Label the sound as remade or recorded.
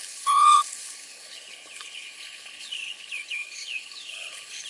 remade